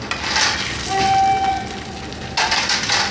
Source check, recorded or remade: recorded